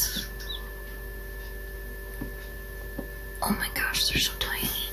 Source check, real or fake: real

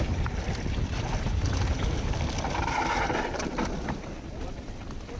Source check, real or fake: fake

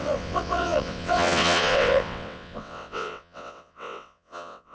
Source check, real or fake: fake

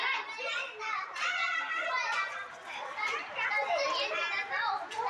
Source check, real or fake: real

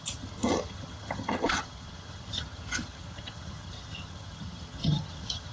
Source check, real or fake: fake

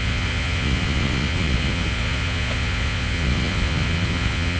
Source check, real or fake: fake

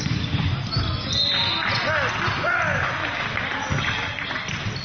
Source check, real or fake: real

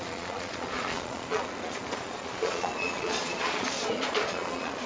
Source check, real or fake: fake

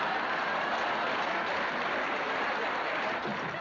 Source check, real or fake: real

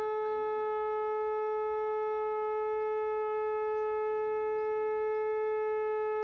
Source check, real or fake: real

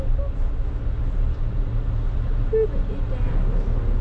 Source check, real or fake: real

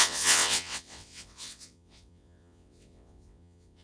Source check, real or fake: fake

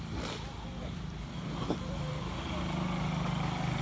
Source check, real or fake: real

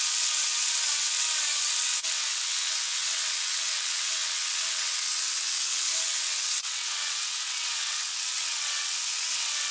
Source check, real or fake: fake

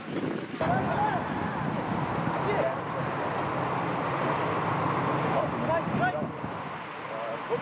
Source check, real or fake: real